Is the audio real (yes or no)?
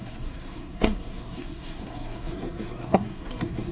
no